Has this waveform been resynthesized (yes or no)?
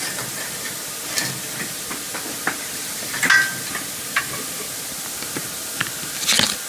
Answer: no